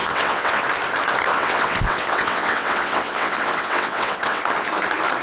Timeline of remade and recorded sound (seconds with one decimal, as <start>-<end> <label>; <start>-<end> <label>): 0.0-0.6 remade; 0.6-1.3 recorded; 1.3-4.4 remade; 4.4-5.2 recorded